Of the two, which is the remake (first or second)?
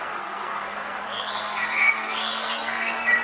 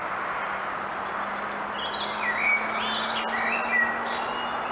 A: first